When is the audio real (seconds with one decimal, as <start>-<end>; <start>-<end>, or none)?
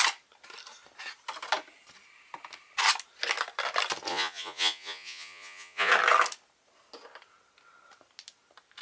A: 0.0-4.1; 5.9-8.8